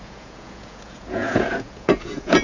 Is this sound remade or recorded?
remade